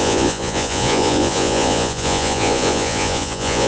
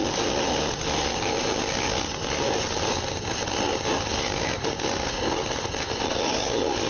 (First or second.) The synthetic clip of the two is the first